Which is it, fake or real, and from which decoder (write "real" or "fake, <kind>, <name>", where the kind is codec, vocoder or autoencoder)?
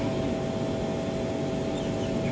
real